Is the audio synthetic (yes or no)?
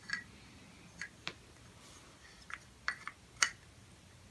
no